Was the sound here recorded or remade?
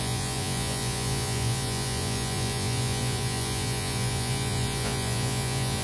remade